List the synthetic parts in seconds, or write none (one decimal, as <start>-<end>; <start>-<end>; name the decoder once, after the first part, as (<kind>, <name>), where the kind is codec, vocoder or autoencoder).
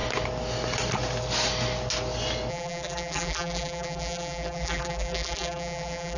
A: 2.5-6.2 (vocoder, BigVGAN v2)